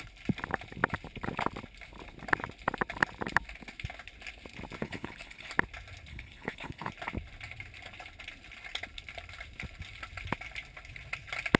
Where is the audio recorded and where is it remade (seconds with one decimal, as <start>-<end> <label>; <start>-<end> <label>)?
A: 0.0-4.8 recorded; 4.8-5.5 remade; 5.5-6.1 recorded; 6.1-6.9 remade; 6.9-11.6 recorded